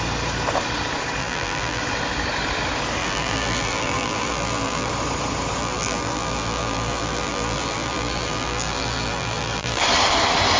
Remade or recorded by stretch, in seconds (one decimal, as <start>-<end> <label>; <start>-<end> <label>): 0.0-1.2 recorded; 1.2-1.8 remade; 1.8-3.0 recorded; 3.0-4.9 remade; 4.9-5.6 recorded; 5.6-9.8 remade; 9.8-10.6 recorded